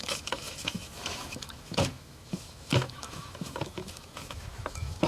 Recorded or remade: remade